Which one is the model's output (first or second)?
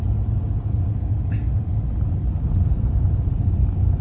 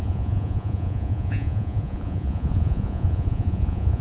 second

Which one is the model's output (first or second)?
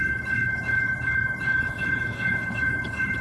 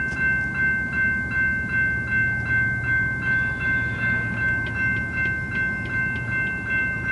first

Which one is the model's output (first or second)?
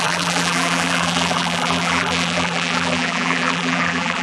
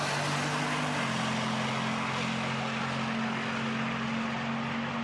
first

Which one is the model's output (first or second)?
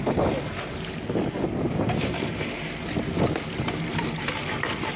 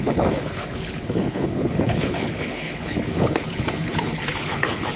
second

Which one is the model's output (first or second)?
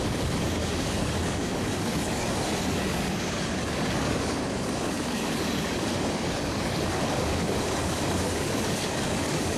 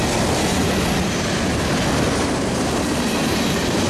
first